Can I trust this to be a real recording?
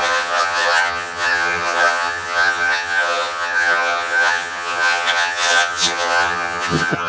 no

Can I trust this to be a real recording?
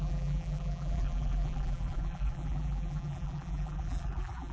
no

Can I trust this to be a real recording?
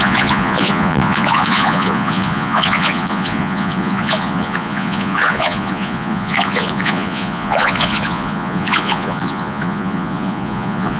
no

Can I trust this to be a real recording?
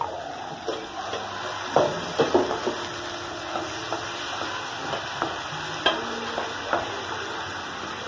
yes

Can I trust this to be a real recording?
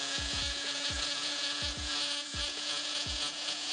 no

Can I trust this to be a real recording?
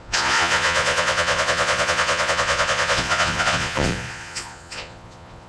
no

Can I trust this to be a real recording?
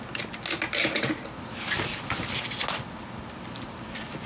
yes